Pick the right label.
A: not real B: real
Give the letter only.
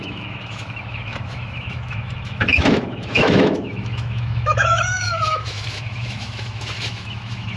A